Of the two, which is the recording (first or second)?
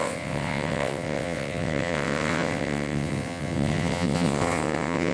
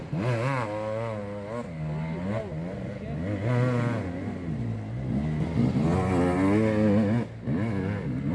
second